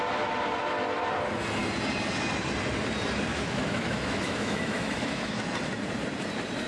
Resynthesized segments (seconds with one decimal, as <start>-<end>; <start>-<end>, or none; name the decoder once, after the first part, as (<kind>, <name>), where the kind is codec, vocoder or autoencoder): 3.3-5.4 (autoencoder, DAC-VAE)